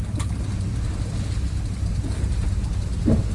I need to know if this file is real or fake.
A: real